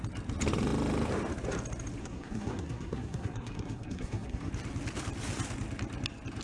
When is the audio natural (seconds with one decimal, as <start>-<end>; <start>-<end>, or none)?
0.0-2.0; 4.5-6.4